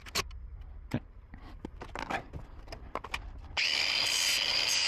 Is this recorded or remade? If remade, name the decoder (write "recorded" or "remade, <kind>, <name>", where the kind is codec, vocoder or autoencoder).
recorded